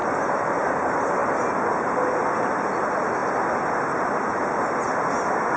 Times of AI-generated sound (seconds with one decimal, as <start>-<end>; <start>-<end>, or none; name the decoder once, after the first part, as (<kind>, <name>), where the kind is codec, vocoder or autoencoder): none